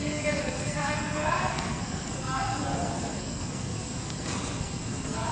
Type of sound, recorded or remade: remade